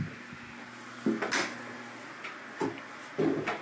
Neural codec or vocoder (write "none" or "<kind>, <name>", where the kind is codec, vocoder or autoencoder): none